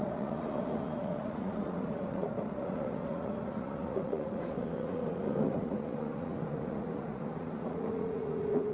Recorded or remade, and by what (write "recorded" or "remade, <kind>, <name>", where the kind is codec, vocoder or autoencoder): remade, vocoder, Vocos